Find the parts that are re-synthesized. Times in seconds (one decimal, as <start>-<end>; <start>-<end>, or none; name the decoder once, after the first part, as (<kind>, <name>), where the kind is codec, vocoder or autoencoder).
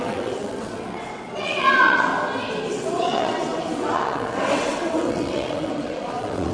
0.0-2.1 (vocoder, WaveNeXt); 2.7-6.5